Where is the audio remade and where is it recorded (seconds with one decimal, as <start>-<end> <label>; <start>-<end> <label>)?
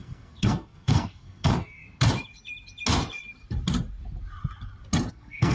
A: 0.0-1.8 remade; 1.8-5.1 recorded; 5.1-5.5 remade